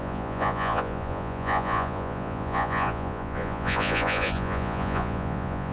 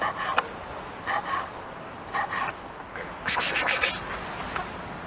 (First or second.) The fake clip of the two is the first